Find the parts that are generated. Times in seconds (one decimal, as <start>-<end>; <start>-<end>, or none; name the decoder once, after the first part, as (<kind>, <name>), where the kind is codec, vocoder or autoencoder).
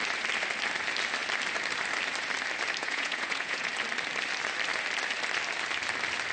2.8-3.7 (vocoder, Vocos)